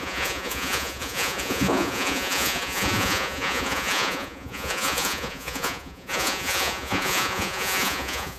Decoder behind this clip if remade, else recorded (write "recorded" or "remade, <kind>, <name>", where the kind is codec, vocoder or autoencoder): remade, vocoder, Vocos